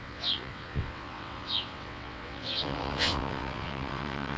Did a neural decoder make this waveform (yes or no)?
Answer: yes